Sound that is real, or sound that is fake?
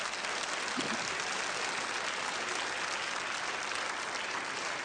real